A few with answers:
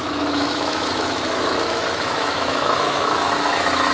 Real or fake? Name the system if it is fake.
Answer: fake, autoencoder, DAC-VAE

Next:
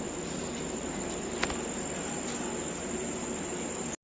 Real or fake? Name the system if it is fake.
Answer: real